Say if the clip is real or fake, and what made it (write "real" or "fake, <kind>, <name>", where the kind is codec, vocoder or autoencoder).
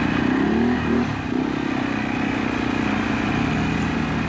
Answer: real